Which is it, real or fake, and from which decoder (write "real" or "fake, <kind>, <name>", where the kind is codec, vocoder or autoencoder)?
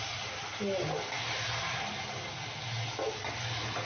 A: real